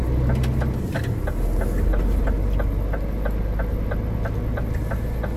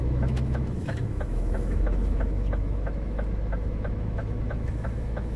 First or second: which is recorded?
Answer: first